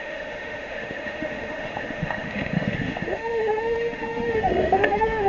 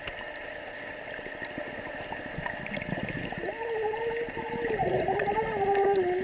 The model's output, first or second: first